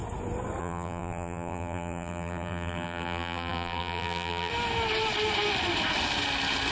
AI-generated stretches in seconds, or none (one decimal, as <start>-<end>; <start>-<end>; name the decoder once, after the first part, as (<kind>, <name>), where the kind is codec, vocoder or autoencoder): 0.6-4.5 (vocoder, BigVGAN v2)